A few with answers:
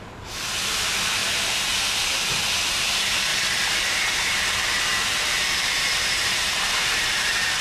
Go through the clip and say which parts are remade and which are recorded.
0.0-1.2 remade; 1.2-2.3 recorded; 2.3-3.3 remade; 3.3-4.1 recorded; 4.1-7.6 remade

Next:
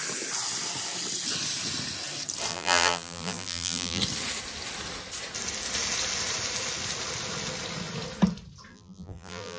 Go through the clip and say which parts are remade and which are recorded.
0.0-2.5 recorded; 2.5-4.0 remade; 4.0-8.7 recorded; 8.7-9.6 remade

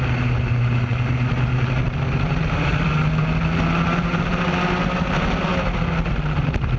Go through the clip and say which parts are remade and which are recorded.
0.0-6.8 recorded

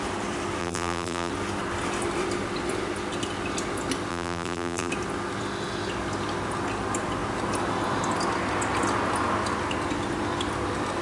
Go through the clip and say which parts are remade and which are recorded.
0.0-0.6 recorded; 0.6-1.3 remade; 1.3-4.1 recorded; 4.1-4.9 remade; 4.9-11.0 recorded

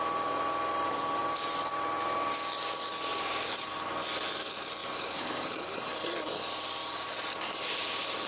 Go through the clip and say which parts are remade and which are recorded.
0.0-3.1 recorded; 3.1-3.7 remade; 3.7-4.8 recorded; 4.8-5.6 remade; 5.6-6.8 recorded; 6.8-8.3 remade

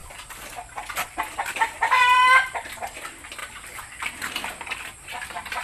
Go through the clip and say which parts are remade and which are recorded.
0.0-2.9 remade; 2.9-3.4 recorded; 3.4-4.0 remade; 4.0-5.6 recorded

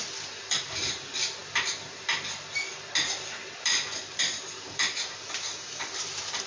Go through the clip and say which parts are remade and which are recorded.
0.0-1.4 remade; 1.4-4.0 recorded; 4.0-6.5 remade

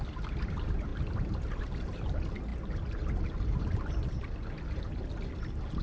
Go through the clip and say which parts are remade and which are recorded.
0.0-0.9 recorded; 0.9-1.6 remade; 1.6-5.8 recorded